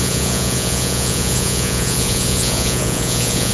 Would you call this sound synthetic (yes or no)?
yes